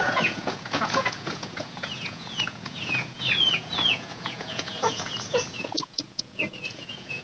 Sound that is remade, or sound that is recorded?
remade